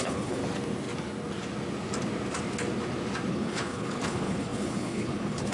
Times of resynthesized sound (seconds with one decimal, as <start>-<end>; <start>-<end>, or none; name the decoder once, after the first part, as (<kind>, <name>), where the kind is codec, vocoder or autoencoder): 0.0-0.4 (codec, HILCodec); 3.3-5.5